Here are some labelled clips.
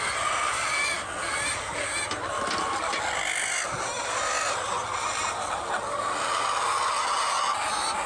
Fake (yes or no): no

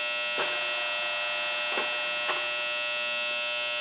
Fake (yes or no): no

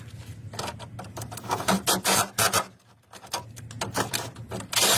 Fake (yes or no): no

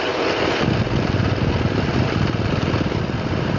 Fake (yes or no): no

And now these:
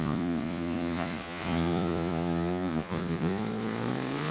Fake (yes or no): yes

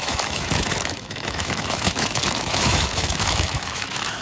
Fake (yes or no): yes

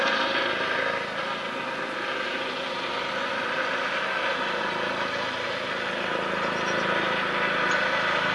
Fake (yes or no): no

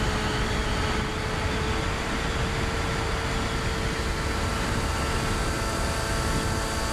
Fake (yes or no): no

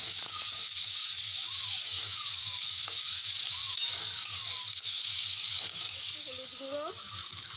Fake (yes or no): yes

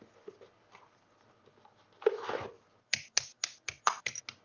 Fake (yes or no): no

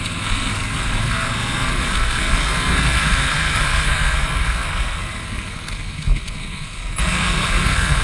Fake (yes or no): yes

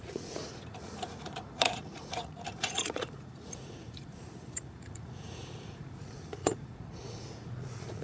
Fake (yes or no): yes